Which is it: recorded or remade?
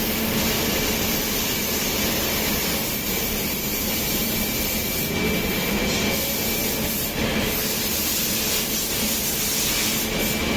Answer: recorded